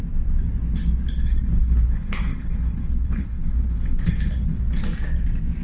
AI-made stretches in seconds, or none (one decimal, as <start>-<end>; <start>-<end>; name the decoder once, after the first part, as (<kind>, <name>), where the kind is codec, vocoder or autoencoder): 1.2-4.6 (codec, HILCodec)